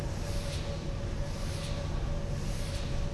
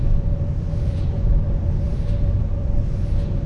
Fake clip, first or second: second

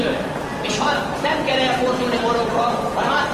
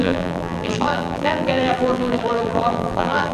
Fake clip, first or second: second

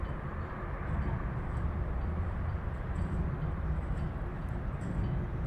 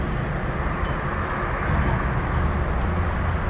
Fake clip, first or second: first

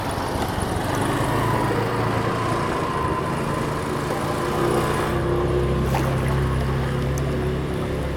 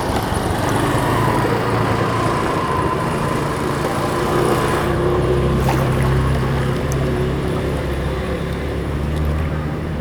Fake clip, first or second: second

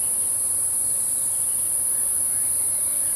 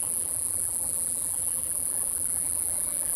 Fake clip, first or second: second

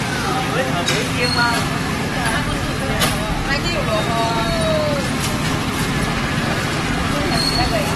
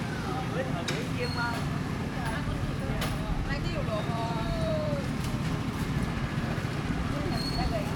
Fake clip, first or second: second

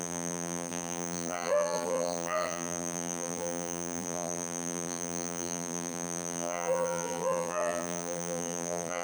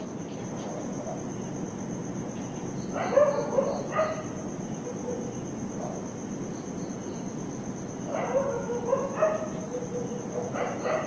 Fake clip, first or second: first